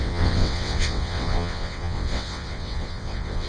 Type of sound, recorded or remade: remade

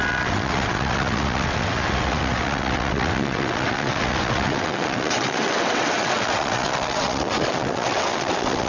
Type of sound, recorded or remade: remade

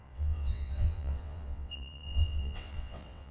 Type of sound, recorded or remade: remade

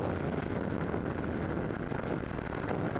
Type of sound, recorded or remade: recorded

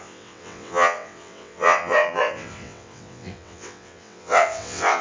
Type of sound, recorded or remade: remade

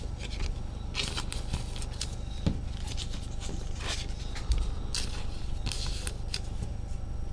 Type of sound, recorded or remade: recorded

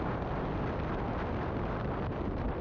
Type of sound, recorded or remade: recorded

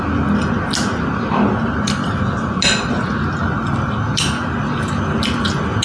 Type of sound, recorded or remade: recorded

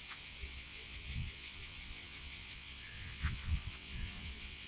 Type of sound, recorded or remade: remade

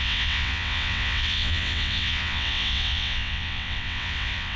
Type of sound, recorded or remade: remade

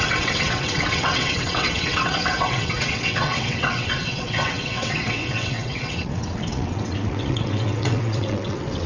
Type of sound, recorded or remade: remade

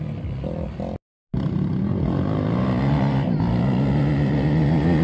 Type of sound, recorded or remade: recorded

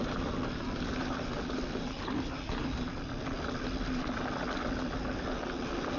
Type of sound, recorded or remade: recorded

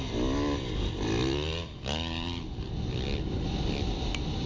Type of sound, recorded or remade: recorded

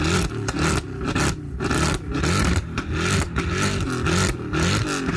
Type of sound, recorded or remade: recorded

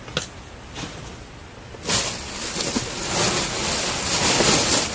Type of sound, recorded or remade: recorded